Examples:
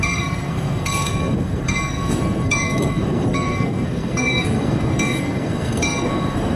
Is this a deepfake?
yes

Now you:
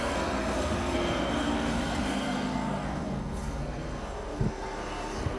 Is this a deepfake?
yes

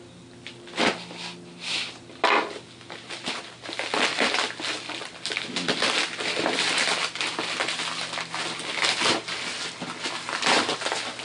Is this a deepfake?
no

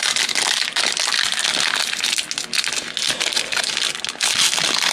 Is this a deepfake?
no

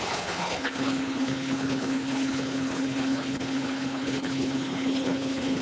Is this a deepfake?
yes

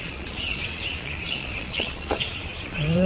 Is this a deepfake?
yes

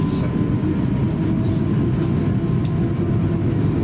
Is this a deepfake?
no